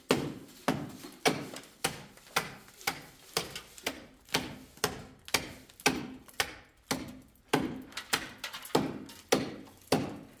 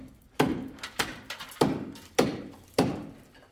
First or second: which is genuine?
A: first